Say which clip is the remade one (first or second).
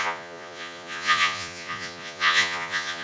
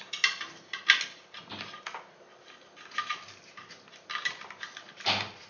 first